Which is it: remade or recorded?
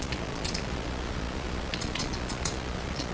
remade